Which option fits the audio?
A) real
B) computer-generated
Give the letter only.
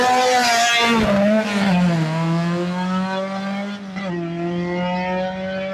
A